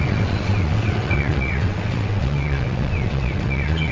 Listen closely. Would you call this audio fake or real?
fake